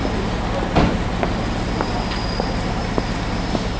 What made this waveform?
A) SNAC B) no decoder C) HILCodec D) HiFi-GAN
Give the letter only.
B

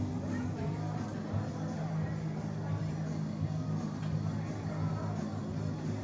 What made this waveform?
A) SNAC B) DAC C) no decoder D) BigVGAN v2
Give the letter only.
C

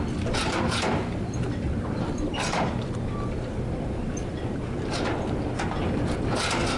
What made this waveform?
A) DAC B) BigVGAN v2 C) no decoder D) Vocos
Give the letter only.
B